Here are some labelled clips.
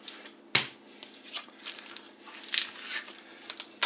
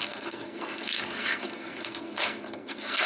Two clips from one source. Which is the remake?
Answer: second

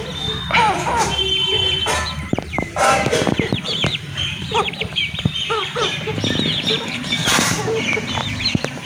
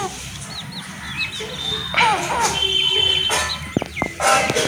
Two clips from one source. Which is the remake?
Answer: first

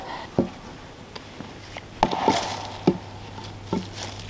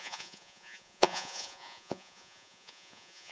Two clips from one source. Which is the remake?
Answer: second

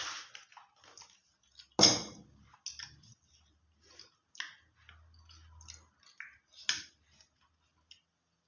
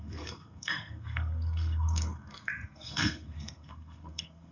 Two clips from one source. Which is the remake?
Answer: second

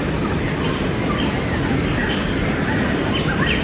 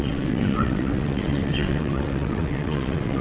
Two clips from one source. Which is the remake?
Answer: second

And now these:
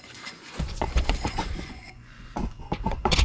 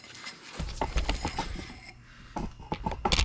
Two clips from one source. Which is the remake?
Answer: first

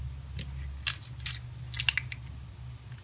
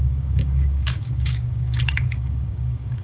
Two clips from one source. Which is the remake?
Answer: second